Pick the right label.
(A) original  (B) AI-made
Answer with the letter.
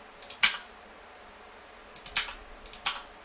A